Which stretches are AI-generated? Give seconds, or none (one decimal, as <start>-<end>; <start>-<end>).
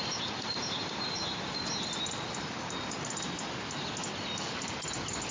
none